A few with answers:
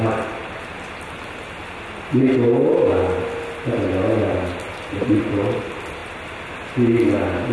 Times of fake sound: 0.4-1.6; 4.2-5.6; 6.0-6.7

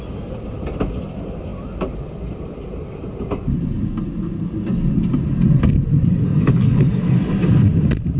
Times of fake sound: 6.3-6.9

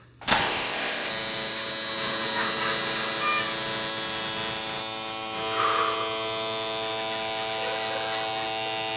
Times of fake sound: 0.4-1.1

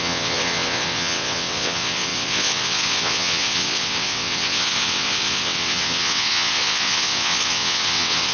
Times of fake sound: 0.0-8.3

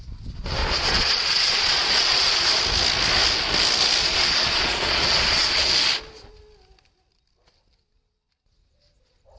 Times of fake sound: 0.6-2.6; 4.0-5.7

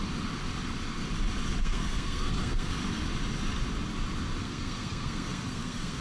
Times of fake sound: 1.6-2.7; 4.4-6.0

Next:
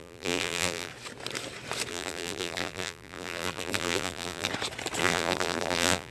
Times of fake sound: 0.0-0.9; 1.9-4.5; 5.0-6.1

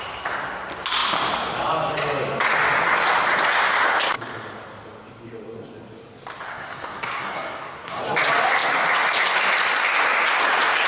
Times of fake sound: 6.5-8.0